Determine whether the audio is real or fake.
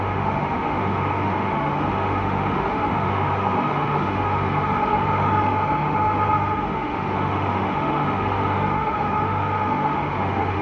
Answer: fake